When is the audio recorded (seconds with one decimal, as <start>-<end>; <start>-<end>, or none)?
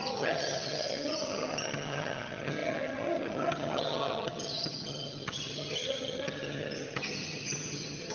none